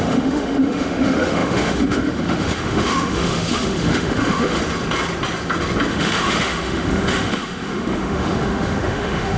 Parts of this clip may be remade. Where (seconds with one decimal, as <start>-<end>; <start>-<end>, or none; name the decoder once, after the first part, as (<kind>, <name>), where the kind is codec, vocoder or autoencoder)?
0.0-4.6 (autoencoder, DAC-VAE); 5.9-9.4